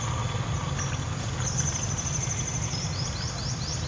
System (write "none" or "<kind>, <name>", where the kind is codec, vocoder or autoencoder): none